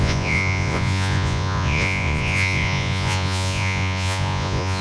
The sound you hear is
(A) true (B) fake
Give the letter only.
B